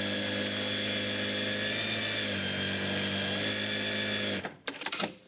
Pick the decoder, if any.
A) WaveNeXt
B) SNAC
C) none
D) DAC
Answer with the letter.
C